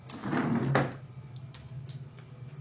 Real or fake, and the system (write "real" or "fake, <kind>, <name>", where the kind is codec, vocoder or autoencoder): real